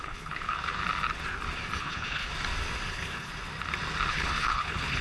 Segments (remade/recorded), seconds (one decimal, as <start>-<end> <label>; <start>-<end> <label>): 0.0-0.8 remade; 0.8-1.8 recorded; 1.8-2.3 remade; 2.3-2.9 recorded; 2.9-3.3 remade; 3.3-4.1 recorded; 4.1-5.0 remade